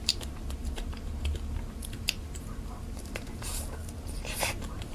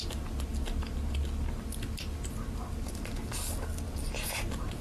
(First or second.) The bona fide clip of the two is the second